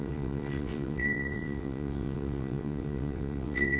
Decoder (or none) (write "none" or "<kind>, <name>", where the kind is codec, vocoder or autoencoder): vocoder, WaveNeXt